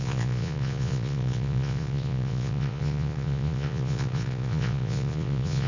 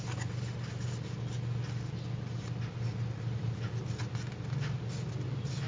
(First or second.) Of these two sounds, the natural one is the second